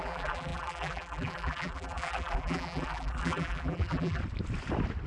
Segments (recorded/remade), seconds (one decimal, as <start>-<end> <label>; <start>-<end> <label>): 0.0-4.2 remade; 4.2-5.1 recorded